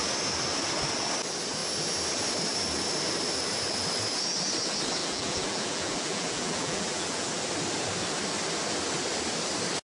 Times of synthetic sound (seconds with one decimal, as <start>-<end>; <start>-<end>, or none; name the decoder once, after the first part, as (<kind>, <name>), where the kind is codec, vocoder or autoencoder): 5.0-7.3 (vocoder, BigVGAN v2)